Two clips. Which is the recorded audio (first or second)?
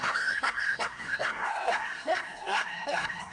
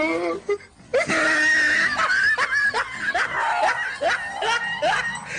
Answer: second